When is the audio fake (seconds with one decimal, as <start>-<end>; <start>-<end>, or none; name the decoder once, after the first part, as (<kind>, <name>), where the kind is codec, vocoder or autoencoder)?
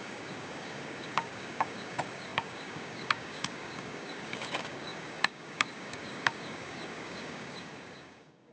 0.0-8.5 (codec, DAC)